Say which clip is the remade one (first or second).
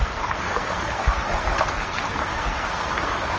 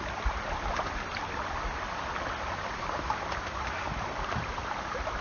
first